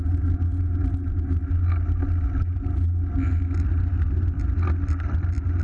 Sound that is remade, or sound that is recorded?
recorded